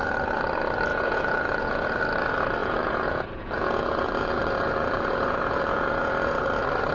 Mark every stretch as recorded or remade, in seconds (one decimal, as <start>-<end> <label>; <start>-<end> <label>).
0.0-0.9 recorded; 0.9-2.0 remade; 2.0-2.6 recorded; 2.6-6.4 remade; 6.4-6.9 recorded